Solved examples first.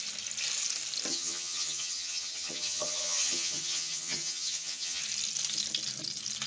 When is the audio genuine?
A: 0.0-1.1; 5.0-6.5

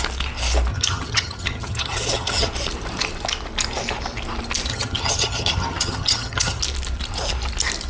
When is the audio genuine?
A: 0.0-0.7; 2.5-4.7; 6.6-7.9